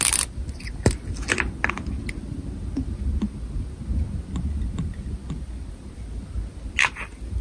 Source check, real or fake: real